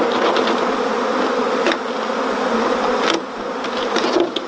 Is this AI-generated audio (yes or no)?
no